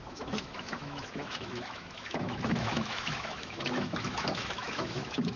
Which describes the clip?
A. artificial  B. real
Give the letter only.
A